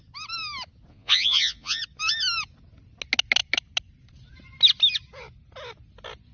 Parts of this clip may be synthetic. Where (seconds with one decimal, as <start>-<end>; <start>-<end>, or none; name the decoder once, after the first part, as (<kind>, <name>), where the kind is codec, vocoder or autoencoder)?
0.9-1.8 (vocoder, Vocos)